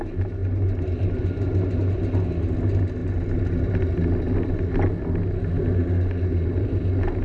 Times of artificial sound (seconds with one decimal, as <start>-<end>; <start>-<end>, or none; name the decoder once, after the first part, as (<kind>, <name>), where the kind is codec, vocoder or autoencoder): none